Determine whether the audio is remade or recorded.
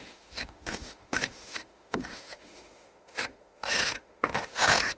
remade